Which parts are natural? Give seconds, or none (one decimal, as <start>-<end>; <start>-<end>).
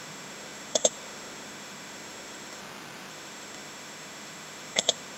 2.6-3.1